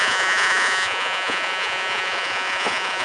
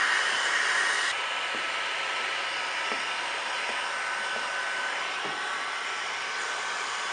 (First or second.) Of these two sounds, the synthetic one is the first